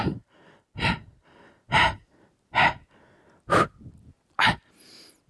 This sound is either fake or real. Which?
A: real